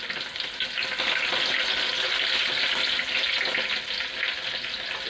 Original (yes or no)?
yes